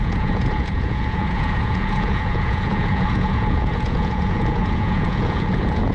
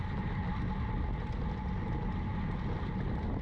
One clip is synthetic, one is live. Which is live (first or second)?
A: second